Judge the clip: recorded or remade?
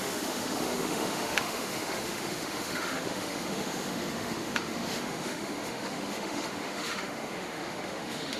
remade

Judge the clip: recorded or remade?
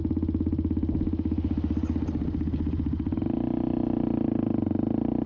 recorded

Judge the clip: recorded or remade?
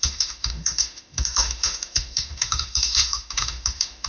remade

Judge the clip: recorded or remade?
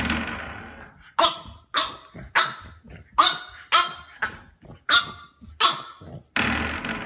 recorded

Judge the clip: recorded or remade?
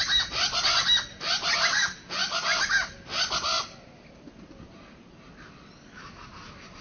recorded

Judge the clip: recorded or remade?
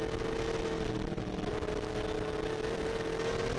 recorded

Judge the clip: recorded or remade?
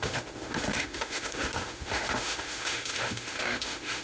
remade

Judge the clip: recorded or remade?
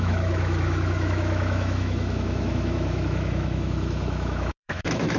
remade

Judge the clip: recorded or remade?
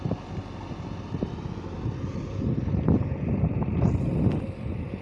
recorded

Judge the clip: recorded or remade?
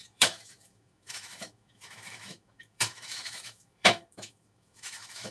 remade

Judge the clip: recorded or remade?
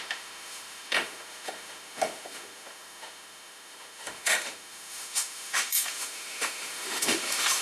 remade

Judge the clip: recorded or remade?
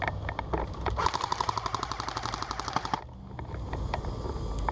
recorded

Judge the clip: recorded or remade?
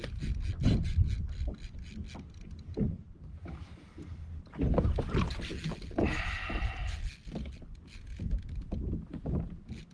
recorded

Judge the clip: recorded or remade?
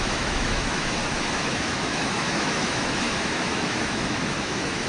remade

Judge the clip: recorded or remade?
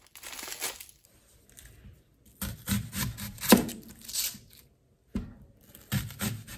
recorded